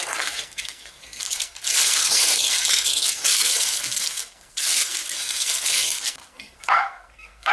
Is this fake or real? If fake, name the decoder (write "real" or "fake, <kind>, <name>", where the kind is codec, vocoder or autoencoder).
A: fake, codec, SNAC